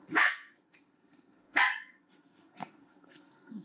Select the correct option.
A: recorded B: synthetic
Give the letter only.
B